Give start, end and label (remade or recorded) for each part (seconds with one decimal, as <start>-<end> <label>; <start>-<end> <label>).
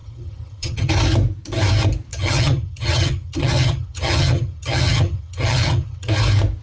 0.0-0.9 remade; 0.9-2.1 recorded; 2.1-6.1 remade; 6.1-6.6 recorded